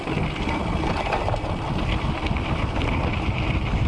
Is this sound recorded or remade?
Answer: recorded